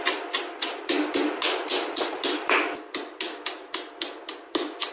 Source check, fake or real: real